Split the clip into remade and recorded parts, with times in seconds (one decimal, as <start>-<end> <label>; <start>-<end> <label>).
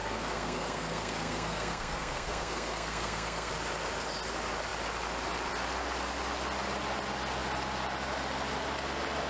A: 0.0-3.5 remade; 3.5-9.3 recorded